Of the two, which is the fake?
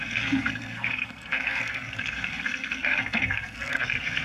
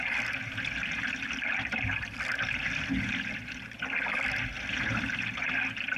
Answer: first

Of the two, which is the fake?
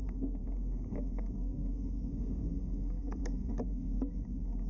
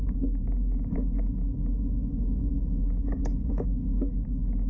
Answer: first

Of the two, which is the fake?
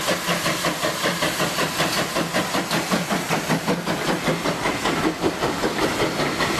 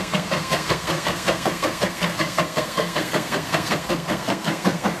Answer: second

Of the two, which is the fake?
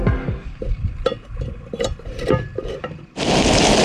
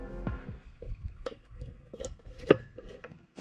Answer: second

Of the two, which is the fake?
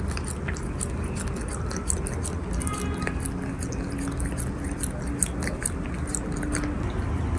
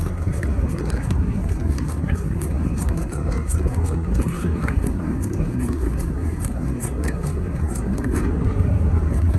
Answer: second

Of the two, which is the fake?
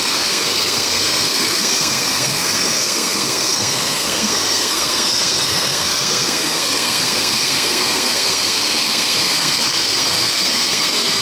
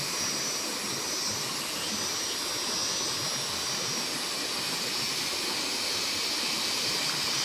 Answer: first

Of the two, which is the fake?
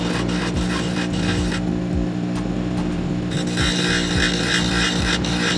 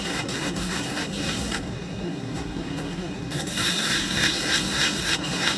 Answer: second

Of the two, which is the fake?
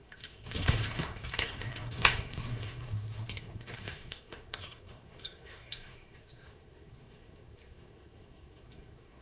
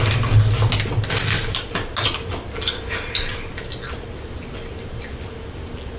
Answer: first